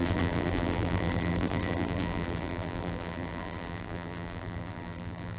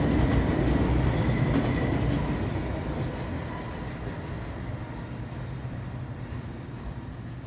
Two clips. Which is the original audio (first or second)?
second